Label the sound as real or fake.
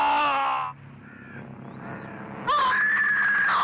real